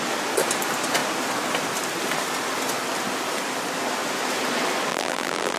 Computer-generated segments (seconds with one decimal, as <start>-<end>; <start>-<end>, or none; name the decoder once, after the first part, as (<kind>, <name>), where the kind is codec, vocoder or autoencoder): 4.9-5.6 (vocoder, BigVGAN v2)